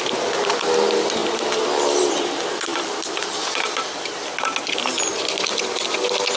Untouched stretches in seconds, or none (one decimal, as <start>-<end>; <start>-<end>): 0.0-2.7; 3.4-6.4